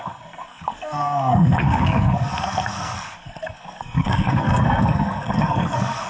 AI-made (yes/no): yes